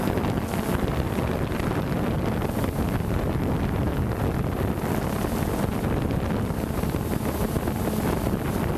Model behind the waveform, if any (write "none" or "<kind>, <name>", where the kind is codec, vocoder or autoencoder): vocoder, BigVGAN v2